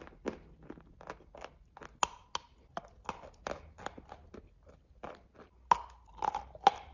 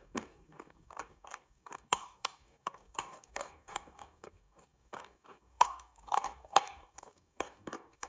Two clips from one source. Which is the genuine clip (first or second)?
first